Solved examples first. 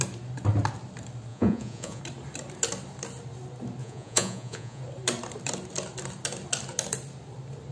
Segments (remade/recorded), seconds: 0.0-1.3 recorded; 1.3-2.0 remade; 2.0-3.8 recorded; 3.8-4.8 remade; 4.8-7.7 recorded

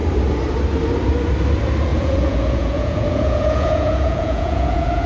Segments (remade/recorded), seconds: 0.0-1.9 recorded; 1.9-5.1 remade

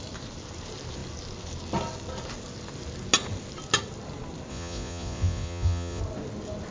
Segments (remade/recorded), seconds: 0.0-4.5 recorded; 4.5-6.0 remade; 6.0-6.7 recorded

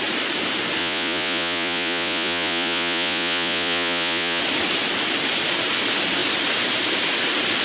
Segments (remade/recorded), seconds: 0.0-0.8 recorded; 0.8-4.4 remade; 4.4-7.6 recorded

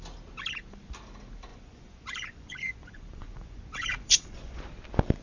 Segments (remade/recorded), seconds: 0.0-1.5 recorded; 1.5-4.6 remade; 4.6-5.2 recorded

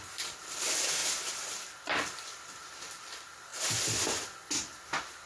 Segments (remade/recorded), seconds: 0.0-5.3 recorded